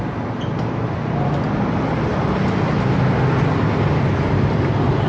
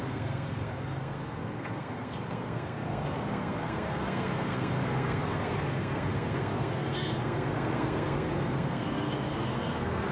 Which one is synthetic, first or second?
second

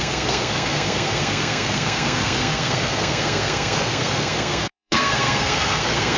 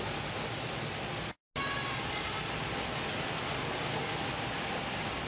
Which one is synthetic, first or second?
first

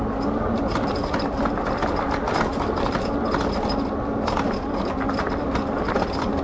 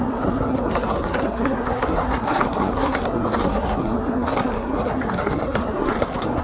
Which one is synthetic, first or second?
second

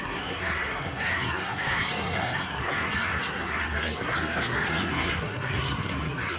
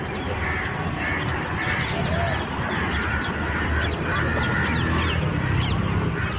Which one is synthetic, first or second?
first